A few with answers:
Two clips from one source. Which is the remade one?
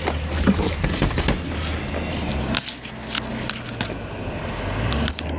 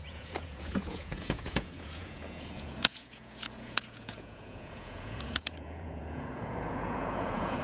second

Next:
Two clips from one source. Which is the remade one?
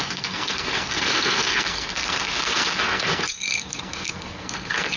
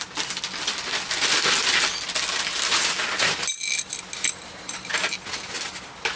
first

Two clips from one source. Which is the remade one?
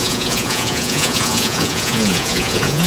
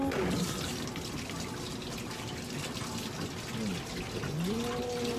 first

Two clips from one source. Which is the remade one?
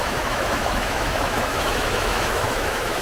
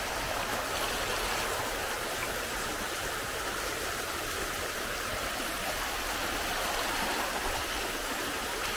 first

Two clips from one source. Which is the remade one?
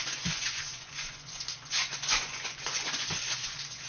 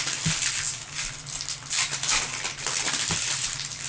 first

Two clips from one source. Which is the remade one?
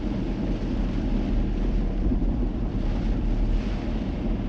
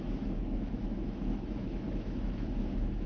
second